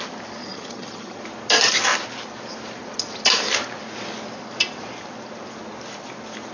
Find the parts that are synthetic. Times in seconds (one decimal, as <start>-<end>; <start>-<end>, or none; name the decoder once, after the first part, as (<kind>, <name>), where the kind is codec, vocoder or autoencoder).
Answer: 0.4-1.2 (vocoder, HiFi-GAN)